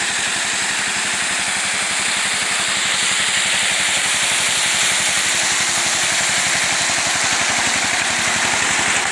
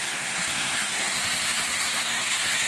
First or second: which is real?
first